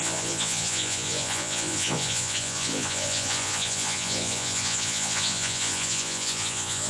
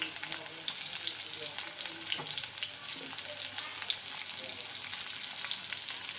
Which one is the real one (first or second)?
second